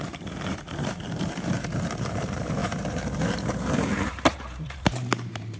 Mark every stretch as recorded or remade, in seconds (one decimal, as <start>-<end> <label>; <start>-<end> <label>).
0.0-5.6 remade